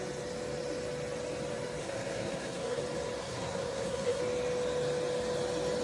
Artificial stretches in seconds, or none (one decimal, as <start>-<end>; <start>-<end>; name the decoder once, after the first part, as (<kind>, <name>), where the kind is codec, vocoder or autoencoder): 1.8-2.8 (codec, SNAC); 3.2-4.2

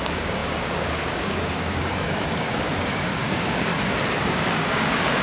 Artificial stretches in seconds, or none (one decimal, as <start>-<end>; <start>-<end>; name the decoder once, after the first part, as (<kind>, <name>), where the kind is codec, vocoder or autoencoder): 0.0-3.7 (codec, DAC); 4.2-5.2

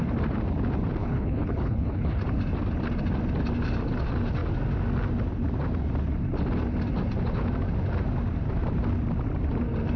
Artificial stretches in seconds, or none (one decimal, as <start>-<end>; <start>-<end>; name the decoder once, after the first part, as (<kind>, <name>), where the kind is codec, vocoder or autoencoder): 1.0-2.2 (codec, HILCodec)

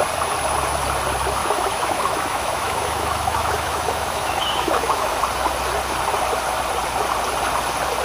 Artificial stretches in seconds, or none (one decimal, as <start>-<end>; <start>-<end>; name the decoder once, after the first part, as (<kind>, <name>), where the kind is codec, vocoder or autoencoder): 1.4-5.2 (autoencoder, DAC-VAE)

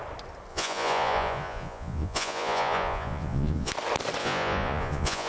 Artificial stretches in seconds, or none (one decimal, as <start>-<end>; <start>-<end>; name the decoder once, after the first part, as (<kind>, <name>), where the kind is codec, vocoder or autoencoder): 0.5-3.7 (vocoder, Vocos); 4.2-5.3

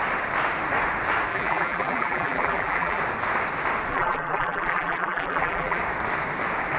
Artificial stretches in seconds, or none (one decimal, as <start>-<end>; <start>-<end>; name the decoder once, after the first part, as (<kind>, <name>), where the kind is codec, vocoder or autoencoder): 1.3-3.0 (vocoder, BigVGAN v2); 3.9-5.8

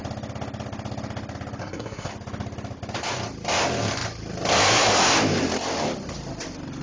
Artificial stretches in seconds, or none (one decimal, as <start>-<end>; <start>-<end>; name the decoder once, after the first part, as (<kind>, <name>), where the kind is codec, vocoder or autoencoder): 1.6-2.1 (codec, SNAC)